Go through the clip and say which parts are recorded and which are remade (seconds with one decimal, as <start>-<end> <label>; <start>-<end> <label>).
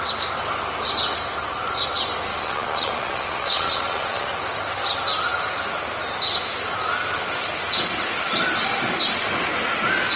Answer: 0.0-2.3 recorded; 2.3-4.3 remade; 4.3-10.2 recorded